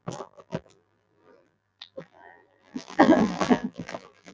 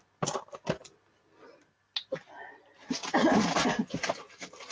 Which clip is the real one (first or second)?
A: second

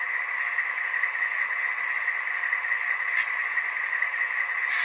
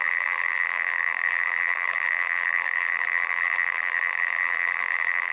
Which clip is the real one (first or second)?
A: first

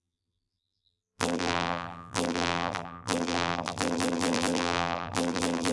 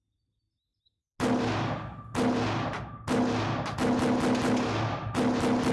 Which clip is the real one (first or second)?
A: second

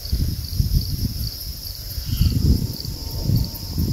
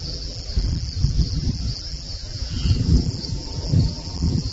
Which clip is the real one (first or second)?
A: first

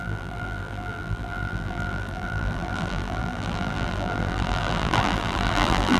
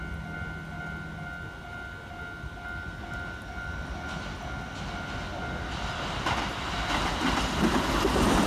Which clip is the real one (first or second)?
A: second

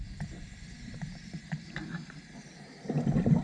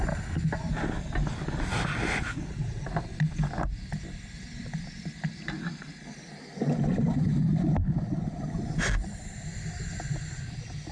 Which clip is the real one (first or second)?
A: second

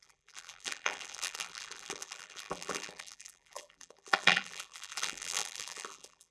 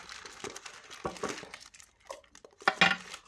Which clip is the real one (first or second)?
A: second